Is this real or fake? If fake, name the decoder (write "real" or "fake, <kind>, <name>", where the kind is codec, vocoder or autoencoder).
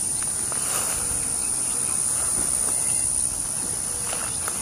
real